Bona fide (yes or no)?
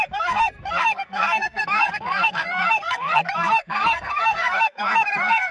no